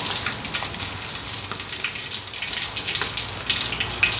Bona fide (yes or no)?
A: yes